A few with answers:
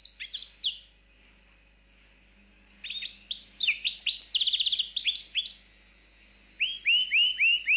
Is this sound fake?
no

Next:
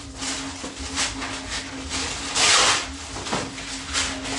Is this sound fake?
no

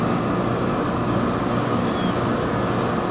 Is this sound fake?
no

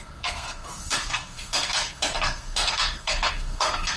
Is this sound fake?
yes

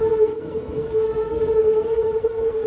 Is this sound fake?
yes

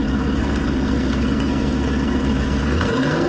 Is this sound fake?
yes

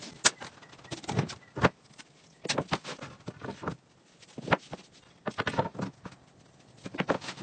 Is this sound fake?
no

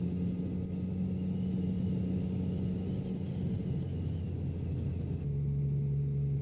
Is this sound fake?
no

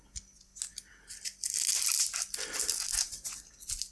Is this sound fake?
no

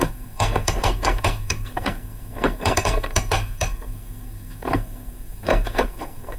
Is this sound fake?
yes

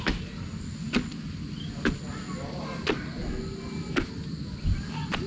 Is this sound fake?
no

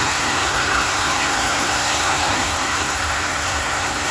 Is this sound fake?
yes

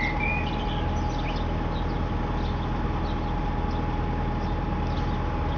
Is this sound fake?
no